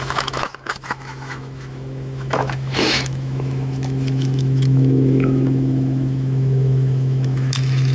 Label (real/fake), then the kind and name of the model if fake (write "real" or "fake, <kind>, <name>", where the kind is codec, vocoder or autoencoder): fake, autoencoder, DAC-VAE